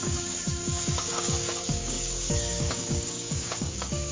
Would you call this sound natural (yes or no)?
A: no